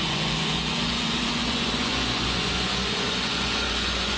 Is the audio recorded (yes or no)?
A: no